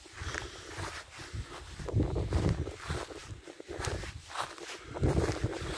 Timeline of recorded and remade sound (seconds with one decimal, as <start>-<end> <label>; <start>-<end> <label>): 0.0-5.8 recorded